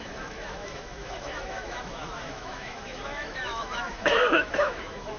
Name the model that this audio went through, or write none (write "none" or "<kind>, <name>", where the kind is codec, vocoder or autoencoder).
autoencoder, DAC-VAE